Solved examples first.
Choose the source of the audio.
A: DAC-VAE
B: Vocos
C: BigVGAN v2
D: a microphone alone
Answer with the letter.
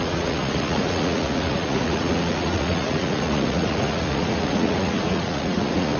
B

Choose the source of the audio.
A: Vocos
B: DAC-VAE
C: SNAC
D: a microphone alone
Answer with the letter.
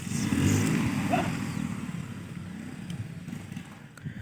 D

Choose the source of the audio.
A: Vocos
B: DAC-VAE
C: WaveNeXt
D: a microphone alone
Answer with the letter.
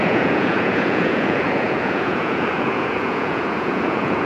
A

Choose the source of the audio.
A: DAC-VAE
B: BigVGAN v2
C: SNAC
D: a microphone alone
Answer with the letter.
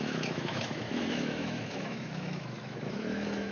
A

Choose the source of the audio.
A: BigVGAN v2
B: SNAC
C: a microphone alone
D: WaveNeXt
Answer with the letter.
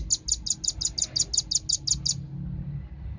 C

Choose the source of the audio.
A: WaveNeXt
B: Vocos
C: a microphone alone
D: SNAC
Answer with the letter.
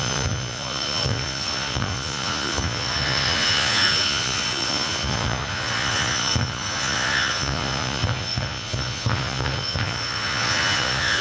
B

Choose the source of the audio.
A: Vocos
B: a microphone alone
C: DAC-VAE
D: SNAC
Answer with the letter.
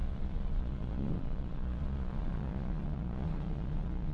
A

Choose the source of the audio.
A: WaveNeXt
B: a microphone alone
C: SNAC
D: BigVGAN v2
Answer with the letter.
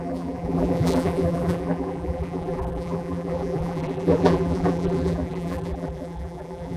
D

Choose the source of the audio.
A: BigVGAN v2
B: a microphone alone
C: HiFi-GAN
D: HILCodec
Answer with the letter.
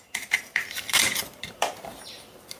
A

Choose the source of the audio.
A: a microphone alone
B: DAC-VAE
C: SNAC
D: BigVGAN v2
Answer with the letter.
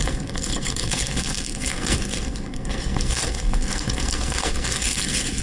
C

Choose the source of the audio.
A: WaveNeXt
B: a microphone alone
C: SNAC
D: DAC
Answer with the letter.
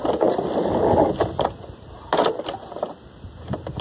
B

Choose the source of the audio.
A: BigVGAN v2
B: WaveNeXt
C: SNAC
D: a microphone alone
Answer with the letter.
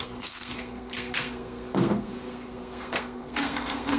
C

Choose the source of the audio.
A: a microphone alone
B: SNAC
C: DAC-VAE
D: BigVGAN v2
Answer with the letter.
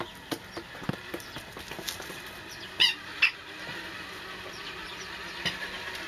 A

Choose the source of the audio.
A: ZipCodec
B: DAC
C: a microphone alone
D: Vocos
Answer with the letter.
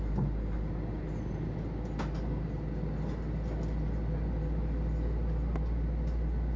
C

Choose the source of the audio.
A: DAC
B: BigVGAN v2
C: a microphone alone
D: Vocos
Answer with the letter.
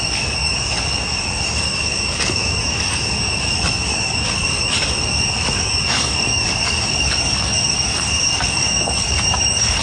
A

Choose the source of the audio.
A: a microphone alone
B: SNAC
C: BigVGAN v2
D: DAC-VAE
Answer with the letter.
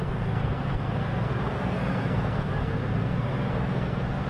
B